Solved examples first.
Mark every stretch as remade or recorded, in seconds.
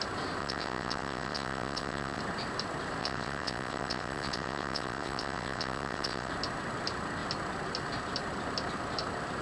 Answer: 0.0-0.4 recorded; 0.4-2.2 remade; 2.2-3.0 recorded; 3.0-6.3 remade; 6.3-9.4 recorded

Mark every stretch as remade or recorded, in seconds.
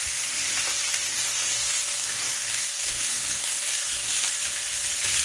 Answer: 0.0-1.1 recorded; 1.1-4.2 remade; 4.2-5.2 recorded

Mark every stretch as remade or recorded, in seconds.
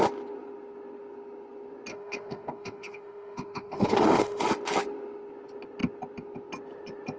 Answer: 0.0-1.9 recorded; 1.9-4.4 remade; 4.4-7.2 recorded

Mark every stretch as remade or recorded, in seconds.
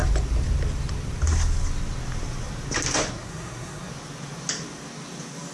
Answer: 0.0-3.1 recorded; 3.1-3.9 remade; 3.9-5.5 recorded